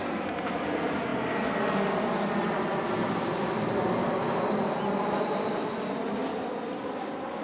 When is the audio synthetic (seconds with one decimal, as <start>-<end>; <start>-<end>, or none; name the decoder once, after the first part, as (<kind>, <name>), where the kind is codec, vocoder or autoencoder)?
none